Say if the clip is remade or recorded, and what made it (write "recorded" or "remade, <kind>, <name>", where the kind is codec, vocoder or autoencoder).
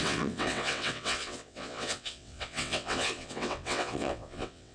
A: remade, vocoder, WaveNeXt